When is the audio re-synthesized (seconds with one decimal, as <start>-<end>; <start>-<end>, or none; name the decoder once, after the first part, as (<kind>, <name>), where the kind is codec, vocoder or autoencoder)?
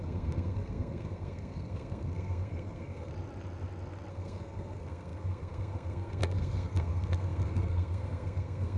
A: 0.0-3.1 (codec, SNAC); 4.1-8.8